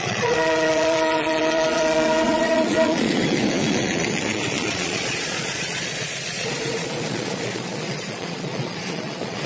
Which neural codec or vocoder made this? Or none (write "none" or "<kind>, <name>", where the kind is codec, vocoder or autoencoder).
vocoder, Vocos